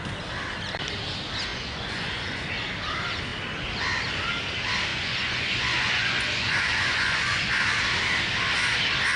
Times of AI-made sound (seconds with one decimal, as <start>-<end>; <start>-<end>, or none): 1.5-2.5; 4.9-7.5